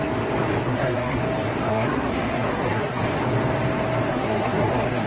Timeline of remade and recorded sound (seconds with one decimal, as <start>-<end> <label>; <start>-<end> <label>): 0.0-0.6 recorded; 0.6-1.2 remade; 1.2-1.7 recorded; 1.7-3.0 remade; 3.0-4.1 recorded; 4.1-5.1 remade